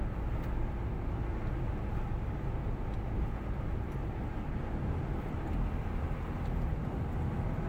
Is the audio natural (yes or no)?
yes